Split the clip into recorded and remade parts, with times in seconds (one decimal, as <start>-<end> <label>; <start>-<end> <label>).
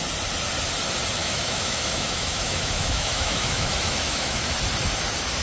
0.0-1.2 recorded; 1.2-4.4 remade; 4.4-5.4 recorded